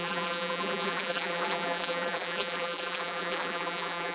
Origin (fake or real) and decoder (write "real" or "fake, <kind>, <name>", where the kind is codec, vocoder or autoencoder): fake, vocoder, BigVGAN v2